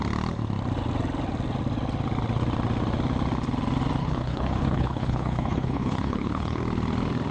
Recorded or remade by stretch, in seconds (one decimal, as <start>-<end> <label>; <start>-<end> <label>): 0.0-4.0 recorded; 4.0-6.6 remade; 6.6-7.3 recorded